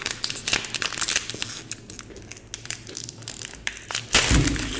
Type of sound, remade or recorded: recorded